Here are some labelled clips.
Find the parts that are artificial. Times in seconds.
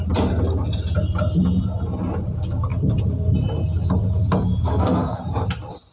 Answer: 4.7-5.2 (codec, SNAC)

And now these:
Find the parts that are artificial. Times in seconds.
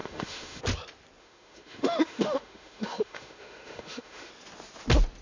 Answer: 0.0-0.6 (autoencoder, DAC-VAE); 1.2-4.3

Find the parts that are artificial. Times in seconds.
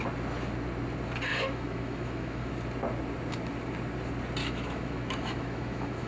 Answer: 1.3-2.5 (autoencoder, DAC-VAE); 4.4-6.1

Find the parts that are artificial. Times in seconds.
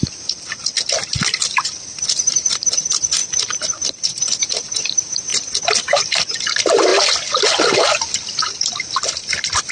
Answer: 0.0-3.2 (vocoder, BigVGAN v2); 3.9-5.3; 6.3-6.9; 7.6-9.7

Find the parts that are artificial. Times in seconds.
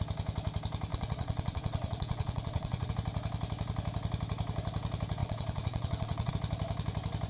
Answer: 0.9-2.9 (vocoder, WaveNeXt); 5.2-6.3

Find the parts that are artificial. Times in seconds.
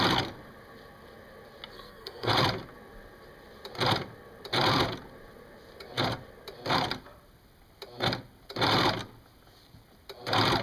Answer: 1.7-2.3 (codec, SNAC)